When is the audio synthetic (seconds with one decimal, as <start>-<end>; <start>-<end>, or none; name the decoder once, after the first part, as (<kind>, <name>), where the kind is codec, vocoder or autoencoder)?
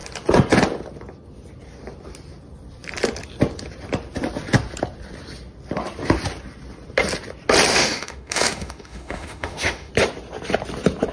7.7-9.9 (autoencoder, DAC-VAE)